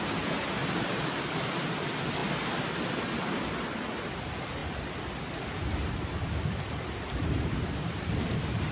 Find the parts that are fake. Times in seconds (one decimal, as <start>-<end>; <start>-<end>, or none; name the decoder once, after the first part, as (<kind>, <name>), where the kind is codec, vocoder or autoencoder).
0.6-1.6 (vocoder, BigVGAN v2); 7.2-8.1